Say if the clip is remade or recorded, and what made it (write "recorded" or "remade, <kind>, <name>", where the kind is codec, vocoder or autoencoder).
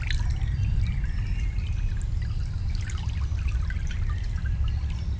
recorded